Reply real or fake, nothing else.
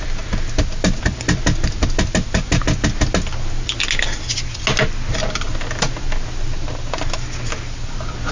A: real